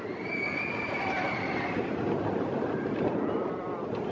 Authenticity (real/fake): real